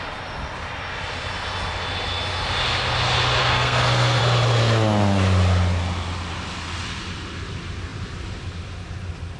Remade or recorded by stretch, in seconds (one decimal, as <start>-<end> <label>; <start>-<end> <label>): 0.0-3.4 recorded; 3.4-4.2 remade; 4.2-9.4 recorded